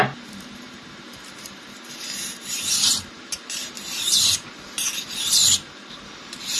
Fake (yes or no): yes